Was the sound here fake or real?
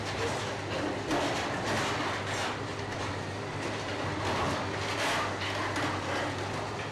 real